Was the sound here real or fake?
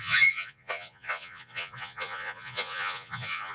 fake